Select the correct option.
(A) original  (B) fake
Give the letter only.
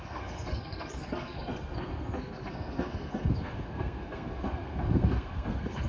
B